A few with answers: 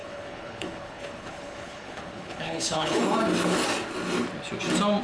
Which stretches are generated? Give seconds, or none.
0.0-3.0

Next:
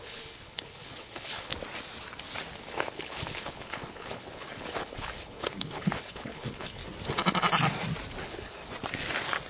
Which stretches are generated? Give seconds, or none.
0.0-1.5; 2.6-6.8; 8.2-8.6